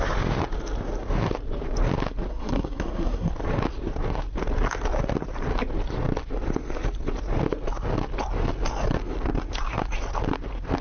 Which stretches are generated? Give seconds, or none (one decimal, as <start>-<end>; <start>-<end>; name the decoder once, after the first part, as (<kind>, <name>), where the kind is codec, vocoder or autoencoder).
2.3-3.3 (codec, SNAC)